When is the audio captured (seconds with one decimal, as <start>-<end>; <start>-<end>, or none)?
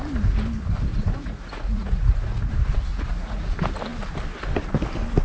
0.0-0.9; 2.5-2.9; 3.5-5.2